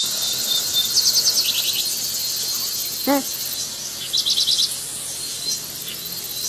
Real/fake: real